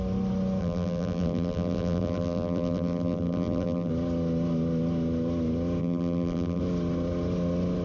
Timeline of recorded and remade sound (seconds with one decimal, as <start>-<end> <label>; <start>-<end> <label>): 0.0-0.6 recorded; 0.6-3.9 remade; 3.9-5.8 recorded; 5.8-6.6 remade; 6.6-7.8 recorded

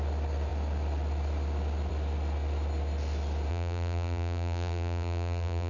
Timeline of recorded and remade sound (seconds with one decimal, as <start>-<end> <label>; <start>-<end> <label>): 0.0-3.5 recorded; 3.5-5.7 remade

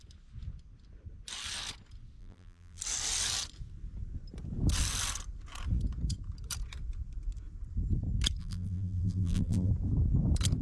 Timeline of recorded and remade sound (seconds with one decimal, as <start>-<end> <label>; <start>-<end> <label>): 0.0-2.2 recorded; 2.2-2.8 remade; 2.8-8.4 recorded; 8.4-9.7 remade; 9.7-10.6 recorded